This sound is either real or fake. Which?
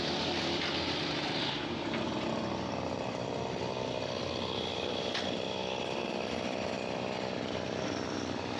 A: fake